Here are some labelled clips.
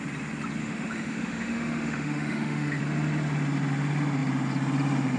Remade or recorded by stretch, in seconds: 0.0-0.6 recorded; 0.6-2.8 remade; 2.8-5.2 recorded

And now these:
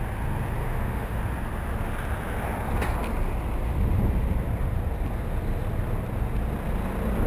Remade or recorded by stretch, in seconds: 0.0-0.6 recorded; 0.6-1.2 remade; 1.2-7.3 recorded

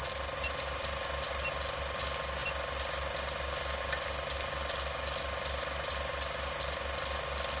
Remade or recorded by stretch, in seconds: 0.0-7.6 recorded

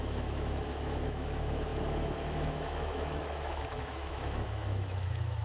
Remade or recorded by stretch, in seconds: 0.0-5.4 remade

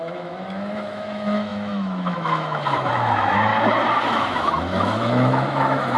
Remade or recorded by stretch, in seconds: 0.0-3.5 remade; 3.5-4.1 recorded; 4.1-6.0 remade

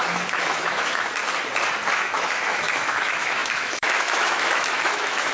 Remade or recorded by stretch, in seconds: 0.0-1.2 remade; 1.2-1.9 recorded; 1.9-5.3 remade